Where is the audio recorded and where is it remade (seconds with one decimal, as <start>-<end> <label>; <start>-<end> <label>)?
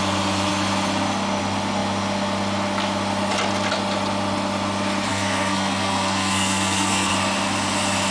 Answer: 0.0-5.1 recorded; 5.1-7.1 remade; 7.1-8.1 recorded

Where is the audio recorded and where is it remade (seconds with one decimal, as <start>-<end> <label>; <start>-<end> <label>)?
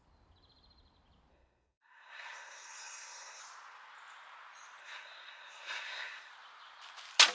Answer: 0.0-1.3 recorded; 1.3-3.4 remade; 3.4-4.8 recorded; 4.8-6.3 remade; 6.3-7.3 recorded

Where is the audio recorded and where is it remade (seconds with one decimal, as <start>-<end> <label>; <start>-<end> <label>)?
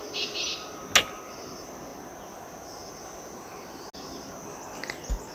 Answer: 0.0-5.3 recorded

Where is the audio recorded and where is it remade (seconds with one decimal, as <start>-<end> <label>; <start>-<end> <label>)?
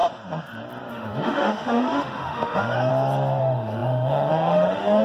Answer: 0.0-0.9 recorded; 0.9-2.9 remade; 2.9-3.4 recorded; 3.4-5.0 remade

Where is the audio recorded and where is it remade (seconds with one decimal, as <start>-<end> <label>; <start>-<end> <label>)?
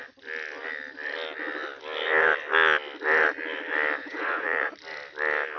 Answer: 0.0-4.0 recorded; 4.0-4.7 remade; 4.7-5.6 recorded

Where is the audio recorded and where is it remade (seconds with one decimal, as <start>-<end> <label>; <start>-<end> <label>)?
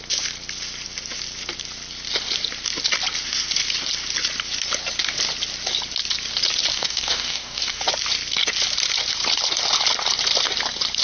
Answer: 0.0-6.7 recorded; 6.7-7.8 remade; 7.8-11.0 recorded